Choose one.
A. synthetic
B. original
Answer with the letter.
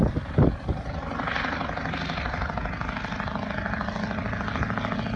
B